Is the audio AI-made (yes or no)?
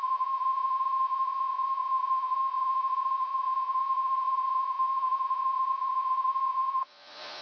yes